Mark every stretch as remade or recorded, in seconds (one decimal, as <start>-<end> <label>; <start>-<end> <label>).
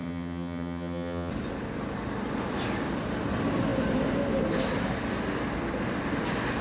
0.0-1.3 remade; 1.3-6.6 recorded